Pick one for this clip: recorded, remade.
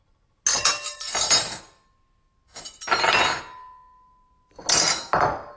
recorded